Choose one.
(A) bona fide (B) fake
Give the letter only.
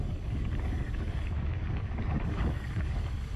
B